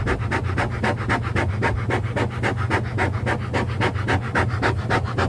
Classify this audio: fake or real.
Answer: real